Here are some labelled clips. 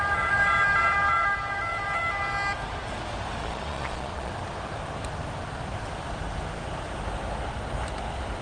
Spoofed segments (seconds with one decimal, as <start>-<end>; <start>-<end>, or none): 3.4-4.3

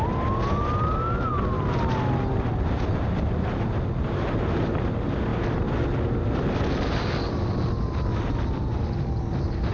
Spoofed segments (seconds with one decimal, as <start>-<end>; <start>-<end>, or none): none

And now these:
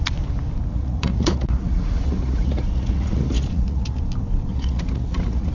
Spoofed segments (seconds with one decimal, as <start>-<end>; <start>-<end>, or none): 0.7-4.0; 4.5-5.5

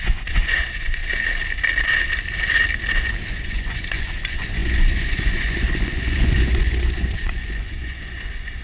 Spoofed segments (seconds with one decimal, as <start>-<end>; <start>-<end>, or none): 0.0-1.0; 3.3-8.6